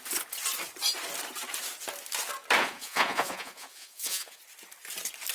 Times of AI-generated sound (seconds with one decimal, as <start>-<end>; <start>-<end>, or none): 2.6-4.4

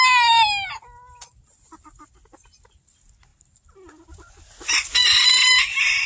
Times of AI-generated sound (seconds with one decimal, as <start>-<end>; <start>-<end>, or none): none

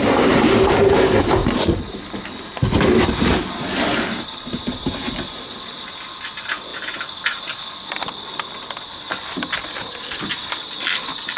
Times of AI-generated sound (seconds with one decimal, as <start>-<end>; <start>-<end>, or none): none

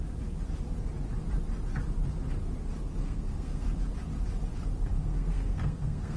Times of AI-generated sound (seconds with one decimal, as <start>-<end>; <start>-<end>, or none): 3.0-3.6; 4.9-6.2

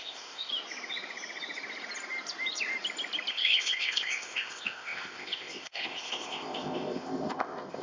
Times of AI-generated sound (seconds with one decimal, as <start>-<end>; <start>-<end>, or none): 0.0-0.5; 3.3-7.8

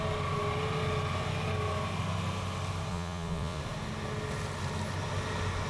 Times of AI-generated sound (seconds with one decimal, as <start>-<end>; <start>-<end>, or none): 2.9-3.6

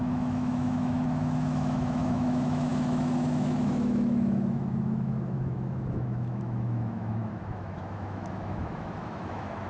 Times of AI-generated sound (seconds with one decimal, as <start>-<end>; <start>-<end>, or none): 0.0-9.7